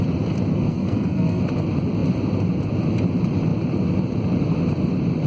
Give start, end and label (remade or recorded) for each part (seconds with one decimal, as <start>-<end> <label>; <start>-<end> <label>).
0.0-0.5 recorded; 0.5-1.4 remade; 1.4-5.3 recorded